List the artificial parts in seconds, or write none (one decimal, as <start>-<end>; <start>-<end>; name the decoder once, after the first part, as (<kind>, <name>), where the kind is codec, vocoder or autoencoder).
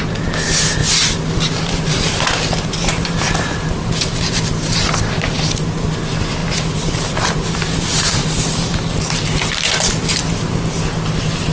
0.8-4.9 (vocoder, BigVGAN v2); 6.4-10.8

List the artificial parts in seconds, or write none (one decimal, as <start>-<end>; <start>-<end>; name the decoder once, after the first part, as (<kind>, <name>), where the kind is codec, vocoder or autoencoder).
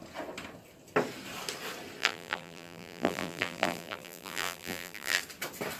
2.0-5.2 (vocoder, BigVGAN v2)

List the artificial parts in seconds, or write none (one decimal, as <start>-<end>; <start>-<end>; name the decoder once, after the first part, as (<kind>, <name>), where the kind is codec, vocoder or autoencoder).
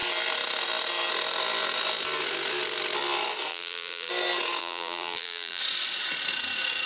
3.5-4.1 (vocoder, BigVGAN v2); 4.6-5.6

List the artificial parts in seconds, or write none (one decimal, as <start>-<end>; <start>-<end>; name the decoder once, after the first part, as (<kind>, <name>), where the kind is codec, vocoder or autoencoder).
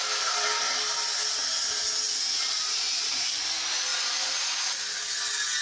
1.4-3.4 (vocoder, BigVGAN v2); 3.9-5.0